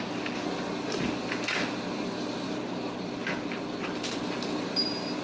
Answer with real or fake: real